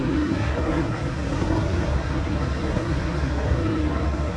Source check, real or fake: fake